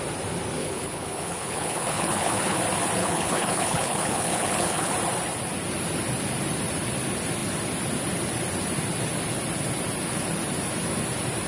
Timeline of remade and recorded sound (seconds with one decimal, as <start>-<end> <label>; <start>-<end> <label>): 0.0-0.6 recorded; 0.6-2.6 remade; 2.6-3.0 recorded; 3.0-4.9 remade; 4.9-11.5 recorded